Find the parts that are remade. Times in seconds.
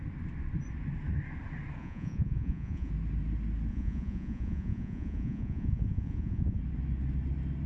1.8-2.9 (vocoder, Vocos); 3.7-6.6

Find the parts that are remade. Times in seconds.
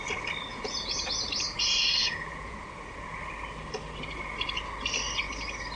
0.5-1.1 (vocoder, Vocos); 2.0-3.2